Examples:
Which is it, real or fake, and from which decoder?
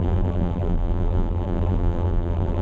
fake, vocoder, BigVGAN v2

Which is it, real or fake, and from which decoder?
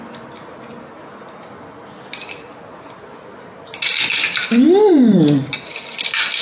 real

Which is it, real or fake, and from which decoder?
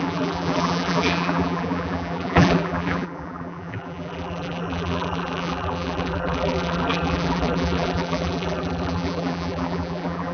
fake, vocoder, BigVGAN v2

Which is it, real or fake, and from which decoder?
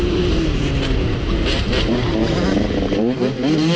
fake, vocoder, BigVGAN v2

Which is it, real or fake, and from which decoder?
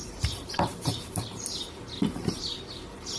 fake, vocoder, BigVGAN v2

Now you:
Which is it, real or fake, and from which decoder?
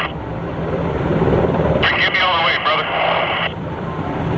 fake, vocoder, BigVGAN v2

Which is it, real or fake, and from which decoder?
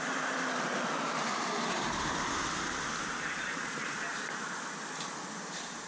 fake, vocoder, BigVGAN v2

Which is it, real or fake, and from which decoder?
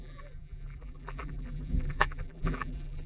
fake, vocoder, BigVGAN v2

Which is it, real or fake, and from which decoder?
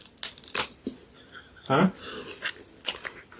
real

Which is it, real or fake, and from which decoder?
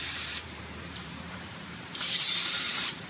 fake, vocoder, BigVGAN v2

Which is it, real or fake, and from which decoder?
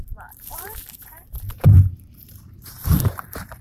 fake, vocoder, BigVGAN v2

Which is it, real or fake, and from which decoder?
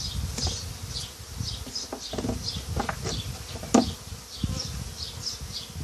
fake, vocoder, BigVGAN v2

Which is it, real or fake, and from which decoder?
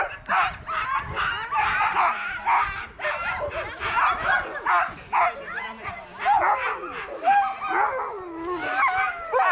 real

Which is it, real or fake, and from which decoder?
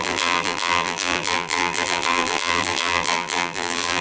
fake, vocoder, BigVGAN v2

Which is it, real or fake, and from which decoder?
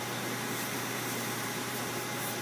fake, vocoder, BigVGAN v2